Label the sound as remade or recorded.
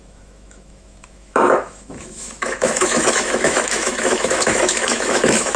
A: remade